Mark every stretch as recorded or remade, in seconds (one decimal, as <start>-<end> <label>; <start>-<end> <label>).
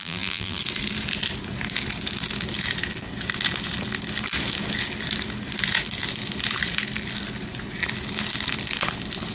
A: 0.0-0.6 remade; 0.6-9.3 recorded